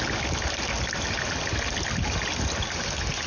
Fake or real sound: real